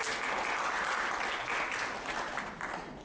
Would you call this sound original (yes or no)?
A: yes